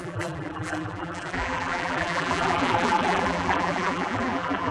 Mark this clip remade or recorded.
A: remade